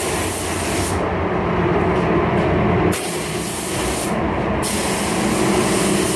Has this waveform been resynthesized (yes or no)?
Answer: no